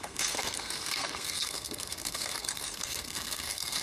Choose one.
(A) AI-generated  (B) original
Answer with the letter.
A